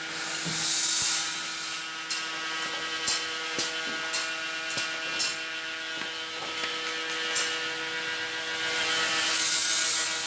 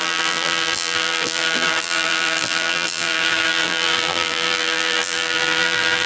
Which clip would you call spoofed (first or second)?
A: second